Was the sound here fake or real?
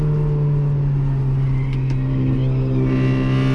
real